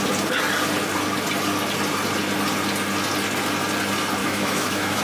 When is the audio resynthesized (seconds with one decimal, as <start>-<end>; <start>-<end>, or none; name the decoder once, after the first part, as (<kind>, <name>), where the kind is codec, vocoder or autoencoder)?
4.2-5.0 (autoencoder, DAC-VAE)